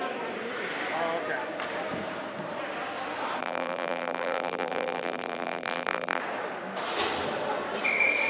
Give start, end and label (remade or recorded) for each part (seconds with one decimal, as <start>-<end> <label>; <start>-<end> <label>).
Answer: 0.0-3.4 recorded; 3.4-6.2 remade; 6.2-8.3 recorded